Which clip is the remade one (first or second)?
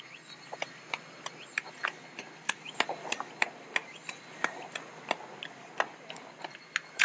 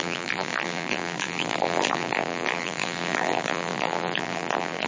second